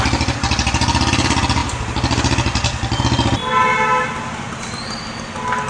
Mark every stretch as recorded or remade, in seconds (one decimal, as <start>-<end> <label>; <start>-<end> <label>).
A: 0.0-5.7 recorded